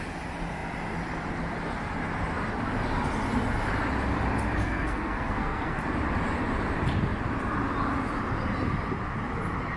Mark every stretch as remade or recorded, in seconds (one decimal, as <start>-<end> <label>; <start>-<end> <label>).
0.0-4.6 recorded; 4.6-5.8 remade; 5.8-9.8 recorded